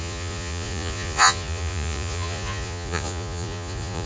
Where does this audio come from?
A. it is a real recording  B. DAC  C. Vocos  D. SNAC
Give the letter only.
C